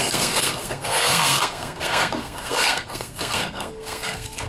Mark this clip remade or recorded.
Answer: remade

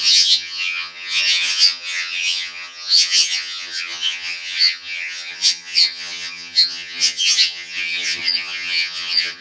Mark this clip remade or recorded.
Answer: remade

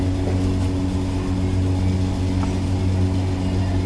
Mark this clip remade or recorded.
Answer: recorded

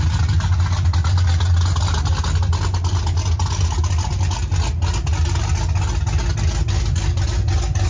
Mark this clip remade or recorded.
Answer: recorded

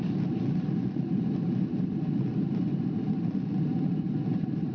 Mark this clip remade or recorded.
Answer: recorded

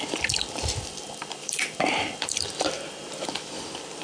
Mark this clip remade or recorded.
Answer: remade